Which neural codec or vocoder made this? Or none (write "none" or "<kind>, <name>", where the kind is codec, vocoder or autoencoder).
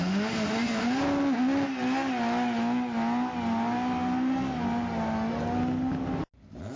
none